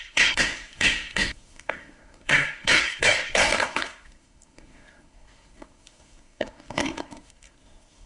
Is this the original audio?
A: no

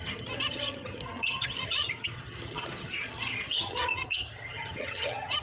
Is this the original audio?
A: no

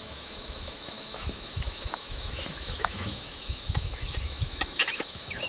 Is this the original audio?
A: no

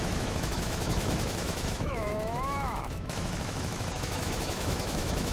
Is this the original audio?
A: no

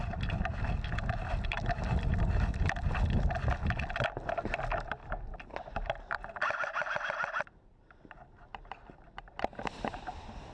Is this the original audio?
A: no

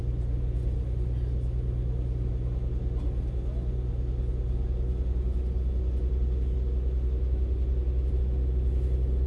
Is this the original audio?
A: yes